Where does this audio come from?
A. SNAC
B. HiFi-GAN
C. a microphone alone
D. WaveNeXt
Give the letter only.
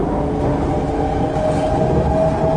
C